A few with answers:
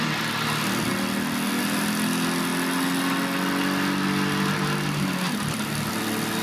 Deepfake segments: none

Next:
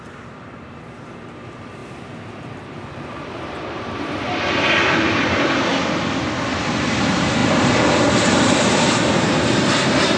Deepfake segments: 0.0-5.7 (vocoder, BigVGAN v2); 6.6-10.2

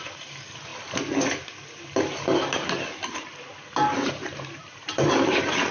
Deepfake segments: 0.0-0.7 (vocoder, BigVGAN v2); 4.1-5.7

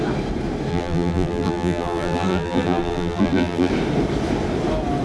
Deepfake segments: 0.7-3.7 (vocoder, BigVGAN v2)